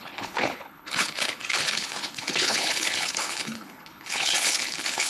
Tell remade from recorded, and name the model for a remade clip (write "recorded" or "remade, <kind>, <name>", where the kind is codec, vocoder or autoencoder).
remade, codec, HILCodec